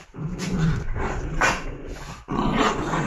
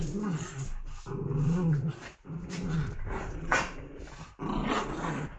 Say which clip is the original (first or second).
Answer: second